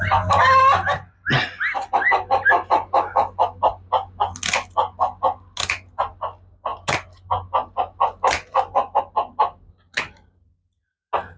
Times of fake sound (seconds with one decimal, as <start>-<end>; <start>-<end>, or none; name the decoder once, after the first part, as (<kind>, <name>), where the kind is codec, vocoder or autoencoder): none